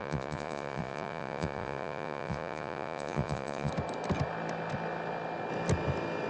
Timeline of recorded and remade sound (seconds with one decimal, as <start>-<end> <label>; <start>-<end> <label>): 0.0-3.7 remade; 3.7-6.3 recorded